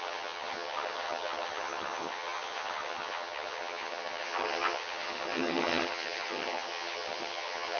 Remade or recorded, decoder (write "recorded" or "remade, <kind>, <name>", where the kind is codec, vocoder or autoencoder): remade, vocoder, HiFi-GAN